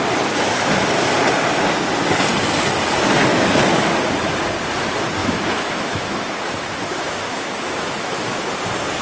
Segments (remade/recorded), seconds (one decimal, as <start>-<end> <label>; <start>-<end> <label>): 0.0-3.3 recorded; 3.3-3.9 remade; 3.9-5.2 recorded; 5.2-8.4 remade; 8.4-9.0 recorded